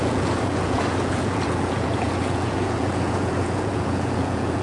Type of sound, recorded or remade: remade